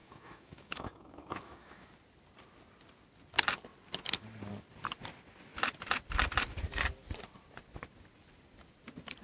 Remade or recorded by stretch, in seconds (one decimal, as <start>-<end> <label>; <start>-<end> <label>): 0.0-1.9 remade; 1.9-9.2 recorded